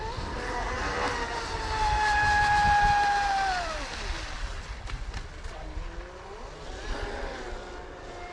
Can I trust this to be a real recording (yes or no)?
yes